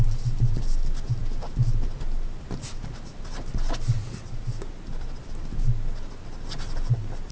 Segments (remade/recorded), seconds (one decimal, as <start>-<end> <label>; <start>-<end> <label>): 0.0-7.3 recorded